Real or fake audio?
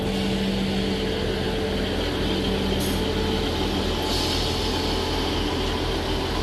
real